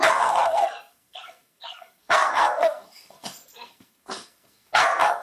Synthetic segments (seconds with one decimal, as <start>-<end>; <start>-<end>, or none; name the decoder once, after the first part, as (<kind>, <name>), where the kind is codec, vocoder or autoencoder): 0.0-5.2 (codec, SNAC)